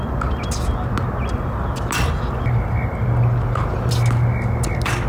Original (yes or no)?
yes